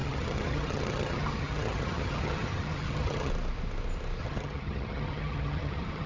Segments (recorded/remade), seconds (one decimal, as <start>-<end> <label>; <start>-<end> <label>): 0.0-3.3 remade; 3.3-4.2 recorded; 4.2-6.1 remade